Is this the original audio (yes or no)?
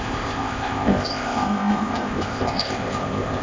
no